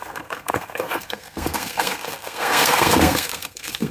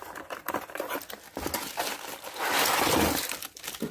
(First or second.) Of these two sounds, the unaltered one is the second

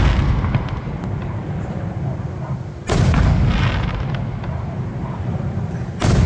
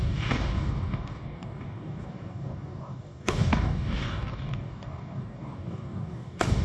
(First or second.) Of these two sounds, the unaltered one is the first